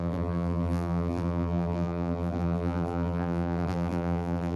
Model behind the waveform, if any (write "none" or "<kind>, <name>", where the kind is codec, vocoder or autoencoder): vocoder, BigVGAN v2